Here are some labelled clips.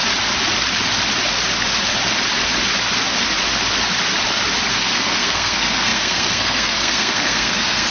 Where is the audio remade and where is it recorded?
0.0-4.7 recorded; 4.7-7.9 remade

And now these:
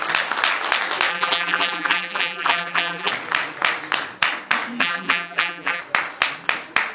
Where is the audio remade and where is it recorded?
0.0-1.1 recorded; 1.1-3.1 remade; 3.1-4.8 recorded; 4.8-5.8 remade; 5.8-6.9 recorded

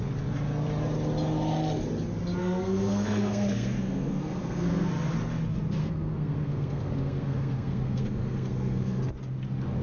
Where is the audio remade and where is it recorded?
0.0-2.4 recorded; 2.4-4.9 remade; 4.9-5.8 recorded; 5.8-9.0 remade; 9.0-9.8 recorded